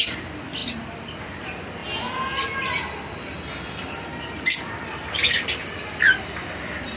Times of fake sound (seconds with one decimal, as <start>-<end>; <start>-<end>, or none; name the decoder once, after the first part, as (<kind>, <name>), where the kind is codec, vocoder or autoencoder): none